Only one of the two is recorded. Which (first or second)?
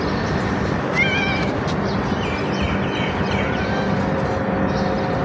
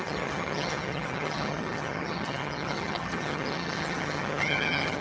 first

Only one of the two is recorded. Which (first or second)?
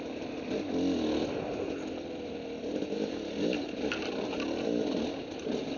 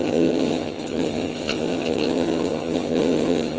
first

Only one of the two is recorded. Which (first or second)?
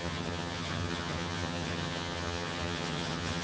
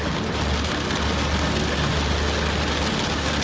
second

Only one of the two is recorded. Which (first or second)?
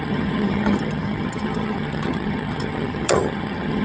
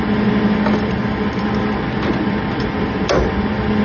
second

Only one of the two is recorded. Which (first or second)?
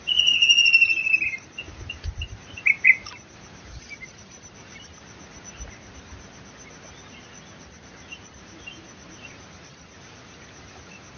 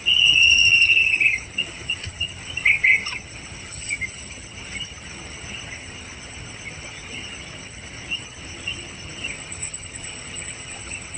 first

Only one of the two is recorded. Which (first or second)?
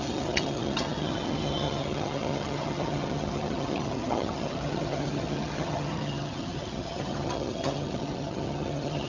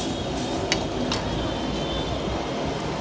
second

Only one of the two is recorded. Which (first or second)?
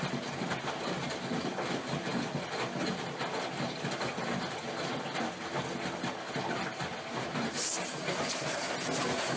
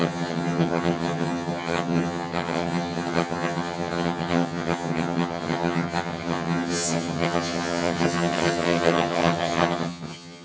first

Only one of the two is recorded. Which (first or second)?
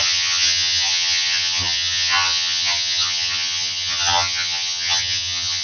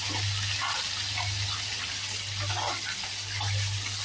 second